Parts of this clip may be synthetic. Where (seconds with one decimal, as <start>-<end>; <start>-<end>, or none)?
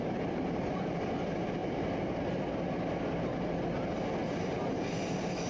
1.6-2.5